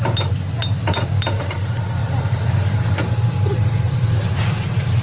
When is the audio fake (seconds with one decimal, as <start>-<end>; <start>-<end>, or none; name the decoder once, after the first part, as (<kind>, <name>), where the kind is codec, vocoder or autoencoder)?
none